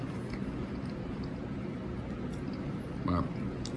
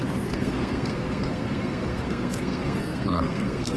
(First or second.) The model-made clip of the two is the second